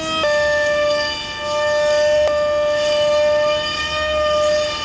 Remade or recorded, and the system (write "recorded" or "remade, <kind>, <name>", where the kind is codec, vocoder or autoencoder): recorded